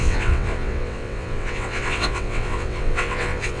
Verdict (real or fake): fake